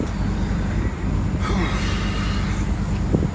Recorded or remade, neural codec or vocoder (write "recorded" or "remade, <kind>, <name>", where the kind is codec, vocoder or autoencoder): recorded